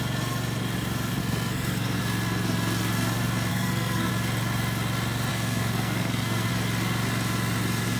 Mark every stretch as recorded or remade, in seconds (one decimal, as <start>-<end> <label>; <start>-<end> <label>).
0.0-1.2 recorded; 1.2-2.0 remade; 2.0-3.5 recorded; 3.5-4.1 remade; 4.1-5.3 recorded; 5.3-6.5 remade; 6.5-8.0 recorded